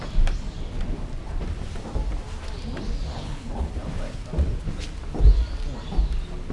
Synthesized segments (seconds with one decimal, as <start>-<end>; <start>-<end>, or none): 3.1-3.7